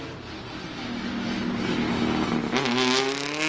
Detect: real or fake real